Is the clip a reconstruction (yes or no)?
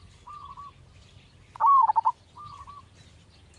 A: no